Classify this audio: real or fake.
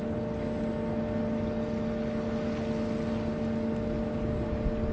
real